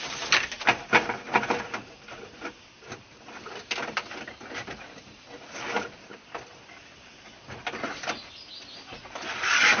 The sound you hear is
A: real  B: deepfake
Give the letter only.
A